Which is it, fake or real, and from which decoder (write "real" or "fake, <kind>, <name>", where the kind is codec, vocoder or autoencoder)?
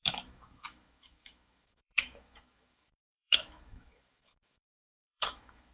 fake, autoencoder, DAC-VAE